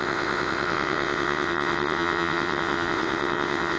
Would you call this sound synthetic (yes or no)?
yes